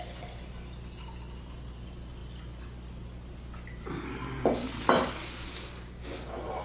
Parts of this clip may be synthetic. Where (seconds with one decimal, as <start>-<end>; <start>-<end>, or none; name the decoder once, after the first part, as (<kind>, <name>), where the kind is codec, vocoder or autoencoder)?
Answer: none